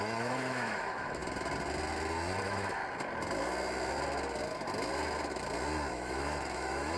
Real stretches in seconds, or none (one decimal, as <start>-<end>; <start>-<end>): 1.2-2.4; 2.8-5.9